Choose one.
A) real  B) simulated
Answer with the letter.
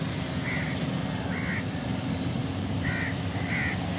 A